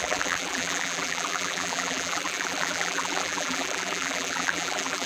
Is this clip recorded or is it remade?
remade